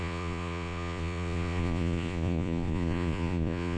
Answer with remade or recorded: remade